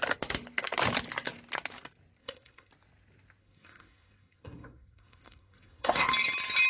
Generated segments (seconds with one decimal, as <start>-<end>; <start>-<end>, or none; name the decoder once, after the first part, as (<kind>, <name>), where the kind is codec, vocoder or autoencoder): 2.2-2.7 (codec, SNAC); 3.4-6.1